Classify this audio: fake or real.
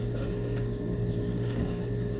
fake